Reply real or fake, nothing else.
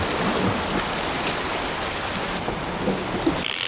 real